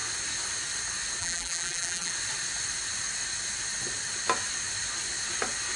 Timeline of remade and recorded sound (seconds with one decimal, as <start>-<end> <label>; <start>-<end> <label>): 0.0-1.2 recorded; 1.2-2.1 remade; 2.1-5.8 recorded